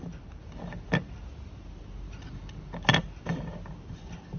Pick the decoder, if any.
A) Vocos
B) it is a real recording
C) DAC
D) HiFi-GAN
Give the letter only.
B